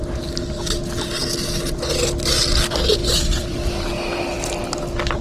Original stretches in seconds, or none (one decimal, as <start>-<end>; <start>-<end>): 0.0-3.0; 3.9-5.2